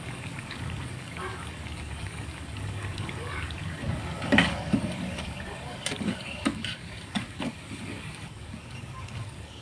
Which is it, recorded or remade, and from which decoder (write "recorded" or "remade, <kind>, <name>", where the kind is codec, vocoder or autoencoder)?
remade, codec, DAC